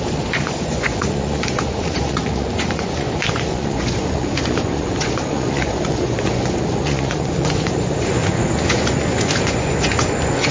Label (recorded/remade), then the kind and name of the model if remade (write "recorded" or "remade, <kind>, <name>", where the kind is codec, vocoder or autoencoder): remade, vocoder, Vocos